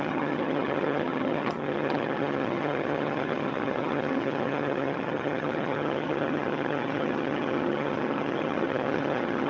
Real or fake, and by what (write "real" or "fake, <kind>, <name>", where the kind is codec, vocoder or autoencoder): fake, vocoder, HiFi-GAN